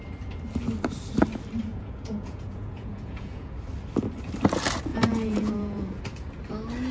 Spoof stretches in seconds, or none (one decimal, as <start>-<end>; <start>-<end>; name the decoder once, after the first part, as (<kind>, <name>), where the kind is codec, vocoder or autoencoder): 1.7-3.5 (vocoder, Vocos); 4.9-6.0